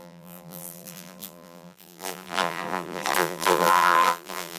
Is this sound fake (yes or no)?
yes